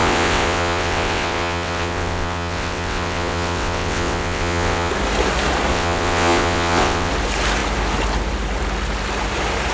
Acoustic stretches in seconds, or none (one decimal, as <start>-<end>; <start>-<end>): 4.9-5.7; 7.1-9.7